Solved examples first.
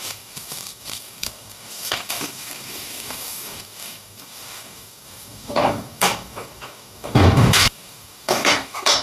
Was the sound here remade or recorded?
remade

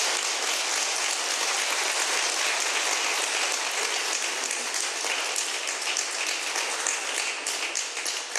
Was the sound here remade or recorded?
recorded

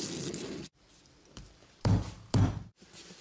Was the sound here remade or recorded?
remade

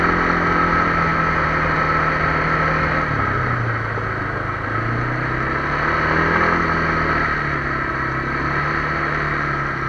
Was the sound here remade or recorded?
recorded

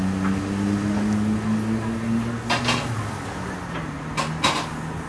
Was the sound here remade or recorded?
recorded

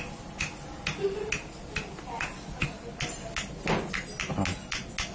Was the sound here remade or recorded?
recorded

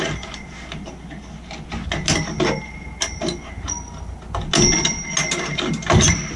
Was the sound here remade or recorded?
recorded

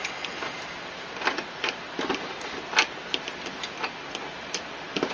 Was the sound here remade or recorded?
remade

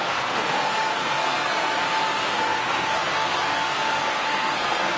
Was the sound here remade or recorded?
remade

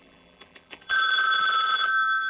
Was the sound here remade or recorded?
remade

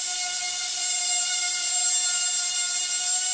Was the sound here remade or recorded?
recorded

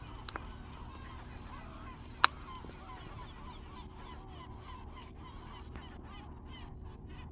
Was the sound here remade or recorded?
recorded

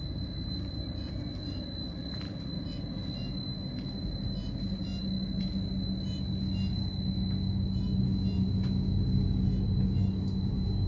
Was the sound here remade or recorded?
recorded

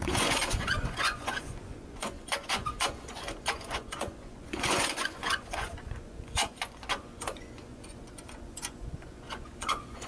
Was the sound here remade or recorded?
remade